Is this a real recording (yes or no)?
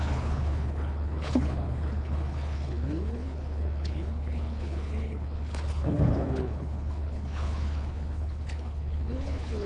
no